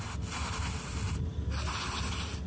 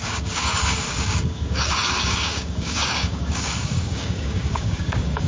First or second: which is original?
first